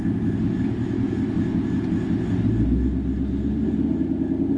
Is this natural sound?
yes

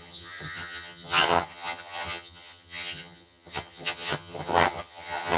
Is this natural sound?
no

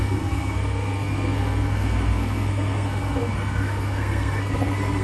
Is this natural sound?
no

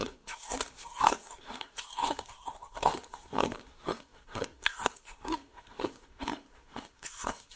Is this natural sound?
no